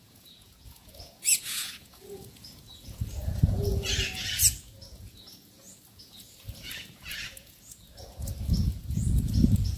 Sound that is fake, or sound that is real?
fake